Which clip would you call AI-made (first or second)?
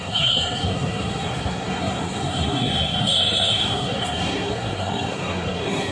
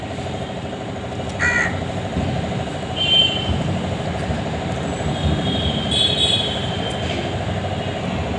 first